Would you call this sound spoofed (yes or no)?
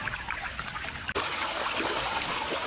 no